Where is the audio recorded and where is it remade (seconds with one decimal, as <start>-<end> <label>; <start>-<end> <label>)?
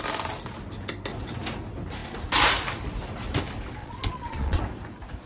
0.0-3.8 recorded; 3.8-4.6 remade; 4.6-5.3 recorded